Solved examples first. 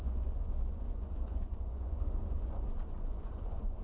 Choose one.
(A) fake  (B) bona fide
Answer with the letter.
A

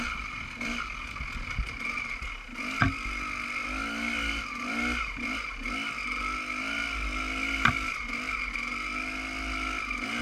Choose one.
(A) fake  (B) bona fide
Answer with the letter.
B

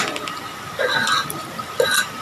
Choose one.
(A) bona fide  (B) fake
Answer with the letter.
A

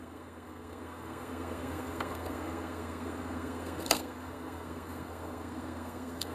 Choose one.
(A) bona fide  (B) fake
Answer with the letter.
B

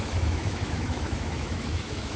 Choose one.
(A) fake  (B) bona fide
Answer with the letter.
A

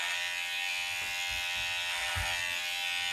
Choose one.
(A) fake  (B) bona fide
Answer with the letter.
B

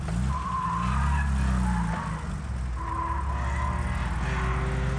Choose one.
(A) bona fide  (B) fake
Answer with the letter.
A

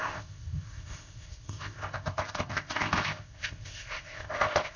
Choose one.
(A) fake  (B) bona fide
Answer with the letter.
A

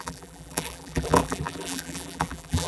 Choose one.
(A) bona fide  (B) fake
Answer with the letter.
B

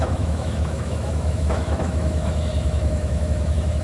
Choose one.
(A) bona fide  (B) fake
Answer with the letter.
B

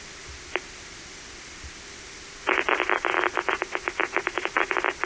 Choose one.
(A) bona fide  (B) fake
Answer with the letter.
A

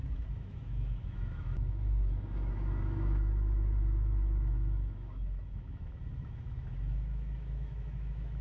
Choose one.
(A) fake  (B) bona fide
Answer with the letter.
A